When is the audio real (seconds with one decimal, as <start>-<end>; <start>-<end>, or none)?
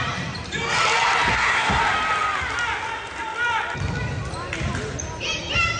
0.0-1.3; 1.8-5.8